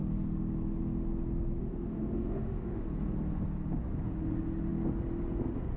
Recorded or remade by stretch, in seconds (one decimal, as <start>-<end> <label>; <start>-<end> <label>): 0.0-1.6 recorded; 1.6-2.8 remade; 2.8-5.8 recorded